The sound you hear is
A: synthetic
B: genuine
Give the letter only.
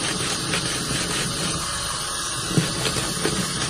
B